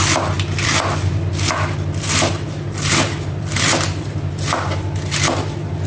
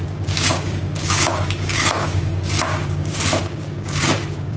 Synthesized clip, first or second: second